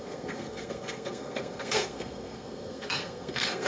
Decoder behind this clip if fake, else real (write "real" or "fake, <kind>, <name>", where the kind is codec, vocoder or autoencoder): fake, codec, SNAC